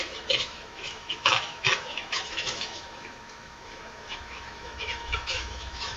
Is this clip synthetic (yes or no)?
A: yes